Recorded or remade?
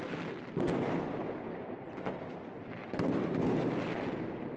recorded